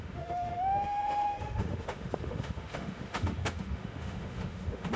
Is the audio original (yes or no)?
no